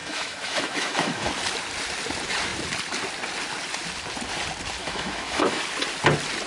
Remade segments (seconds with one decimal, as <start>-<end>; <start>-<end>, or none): 0.0-1.3; 4.8-5.6